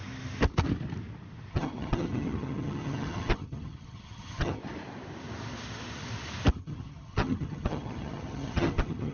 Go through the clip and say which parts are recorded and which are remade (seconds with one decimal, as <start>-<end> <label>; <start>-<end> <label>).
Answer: 0.0-1.5 recorded; 1.5-4.6 remade; 4.6-6.5 recorded; 6.5-9.1 remade